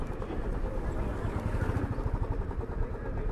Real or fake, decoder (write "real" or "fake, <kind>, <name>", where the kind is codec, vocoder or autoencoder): real